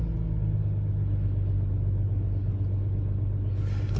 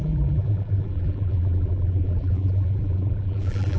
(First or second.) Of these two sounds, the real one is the first